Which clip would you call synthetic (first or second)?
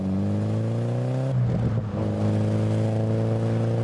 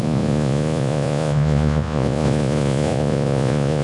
second